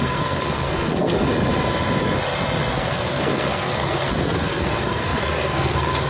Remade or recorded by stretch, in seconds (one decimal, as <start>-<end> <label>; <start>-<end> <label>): 0.0-1.3 remade; 1.3-2.7 recorded; 2.7-6.1 remade